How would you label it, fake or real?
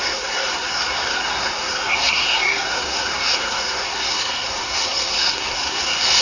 fake